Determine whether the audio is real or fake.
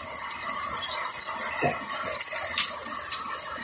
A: real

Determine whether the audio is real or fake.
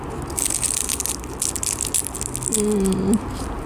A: real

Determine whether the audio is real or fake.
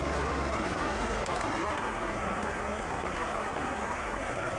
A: fake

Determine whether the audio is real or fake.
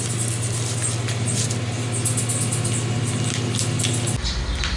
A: real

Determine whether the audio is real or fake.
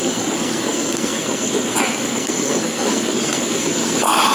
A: fake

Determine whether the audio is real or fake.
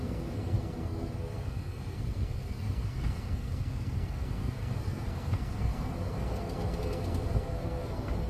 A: fake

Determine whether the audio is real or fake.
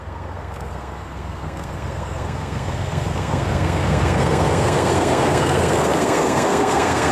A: fake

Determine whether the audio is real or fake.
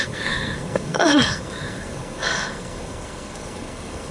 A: fake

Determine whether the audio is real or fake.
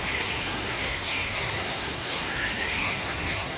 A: fake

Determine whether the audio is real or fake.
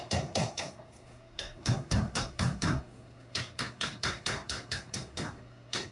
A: fake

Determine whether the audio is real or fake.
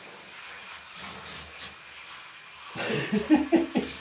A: real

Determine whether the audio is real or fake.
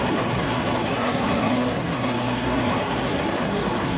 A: fake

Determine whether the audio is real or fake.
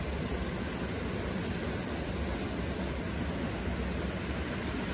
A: real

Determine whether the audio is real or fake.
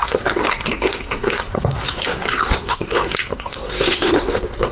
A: fake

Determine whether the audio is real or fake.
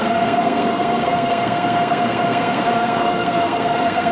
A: fake